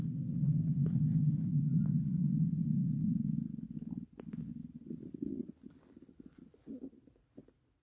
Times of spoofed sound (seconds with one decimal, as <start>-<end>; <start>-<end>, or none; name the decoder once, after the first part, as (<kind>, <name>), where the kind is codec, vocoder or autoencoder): none